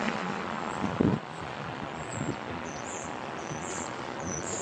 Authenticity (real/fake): fake